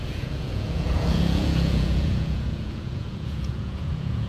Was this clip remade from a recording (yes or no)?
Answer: yes